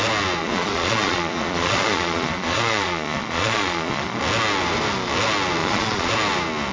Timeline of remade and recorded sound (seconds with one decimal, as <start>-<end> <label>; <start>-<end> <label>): 0.0-0.4 recorded; 0.4-4.2 remade; 4.2-5.6 recorded; 5.6-6.1 remade; 6.1-6.7 recorded